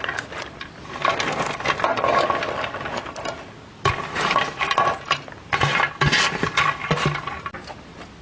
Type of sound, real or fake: real